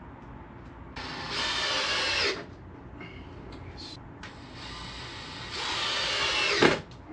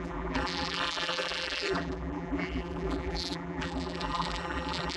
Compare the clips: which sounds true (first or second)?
first